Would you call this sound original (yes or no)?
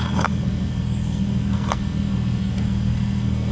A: no